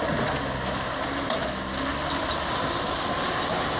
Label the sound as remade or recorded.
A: recorded